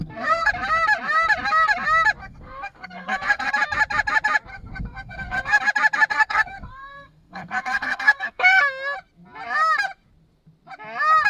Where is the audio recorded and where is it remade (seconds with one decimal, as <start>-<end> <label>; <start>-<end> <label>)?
0.0-0.5 remade; 0.5-2.2 recorded; 2.2-3.5 remade; 3.5-4.5 recorded; 4.5-5.6 remade; 5.6-6.1 recorded; 6.1-8.6 remade; 8.6-11.3 recorded